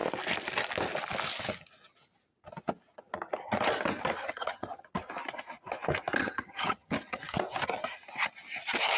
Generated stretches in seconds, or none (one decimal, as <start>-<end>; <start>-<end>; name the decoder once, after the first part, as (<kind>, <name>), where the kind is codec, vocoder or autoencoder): 4.2-4.8 (vocoder, HiFi-GAN); 6.2-7.2